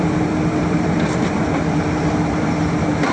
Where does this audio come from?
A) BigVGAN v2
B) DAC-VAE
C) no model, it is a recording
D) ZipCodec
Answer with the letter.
A